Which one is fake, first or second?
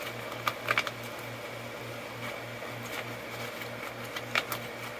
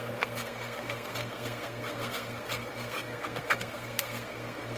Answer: second